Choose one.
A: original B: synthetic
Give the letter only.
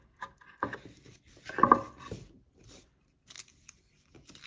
A